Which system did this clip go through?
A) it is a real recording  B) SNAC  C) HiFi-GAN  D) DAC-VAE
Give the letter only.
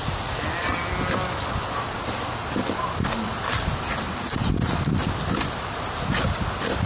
A